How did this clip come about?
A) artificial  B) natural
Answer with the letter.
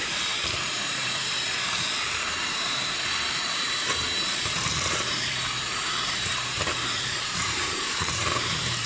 A